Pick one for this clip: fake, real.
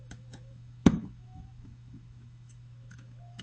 fake